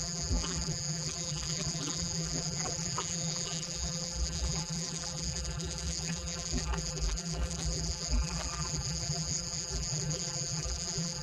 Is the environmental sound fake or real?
fake